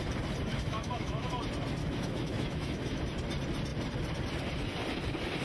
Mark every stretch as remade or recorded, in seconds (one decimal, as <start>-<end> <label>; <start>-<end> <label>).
0.0-0.5 recorded; 0.5-1.3 remade; 1.3-1.8 recorded; 1.8-3.0 remade; 3.0-5.4 recorded